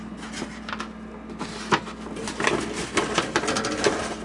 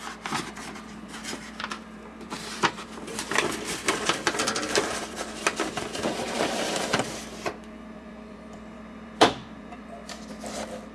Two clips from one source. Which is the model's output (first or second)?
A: second